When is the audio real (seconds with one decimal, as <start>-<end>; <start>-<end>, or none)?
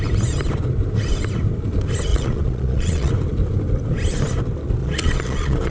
0.0-2.1; 3.1-4.8